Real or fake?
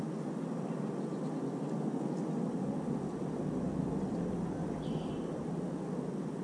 real